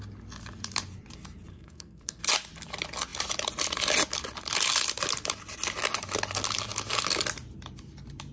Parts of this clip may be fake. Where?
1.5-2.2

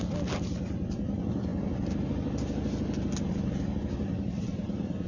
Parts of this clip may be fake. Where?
none

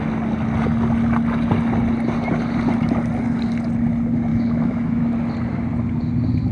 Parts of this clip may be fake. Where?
4.3-5.0

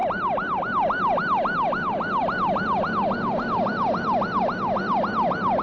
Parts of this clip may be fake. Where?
0.0-0.6; 2.2-4.4

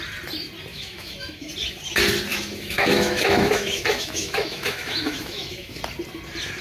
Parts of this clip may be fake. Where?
0.7-1.5; 2.3-5.8

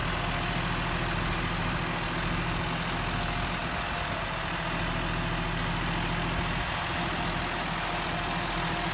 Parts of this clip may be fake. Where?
none

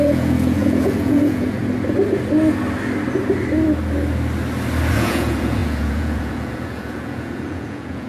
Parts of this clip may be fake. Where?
0.0-1.6; 4.9-8.1